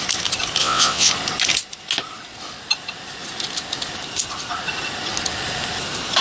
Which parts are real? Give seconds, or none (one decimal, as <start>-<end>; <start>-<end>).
0.0-0.6; 1.1-6.2